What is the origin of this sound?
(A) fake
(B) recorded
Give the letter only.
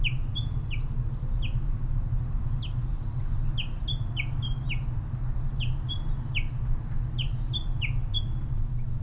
B